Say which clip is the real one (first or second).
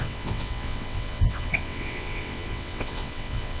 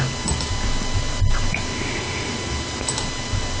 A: second